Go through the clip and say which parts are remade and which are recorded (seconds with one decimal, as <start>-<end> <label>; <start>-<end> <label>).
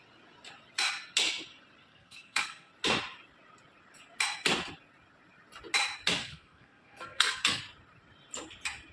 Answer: 0.0-1.9 recorded; 1.9-2.7 remade; 2.7-6.2 recorded; 6.2-7.6 remade; 7.6-8.9 recorded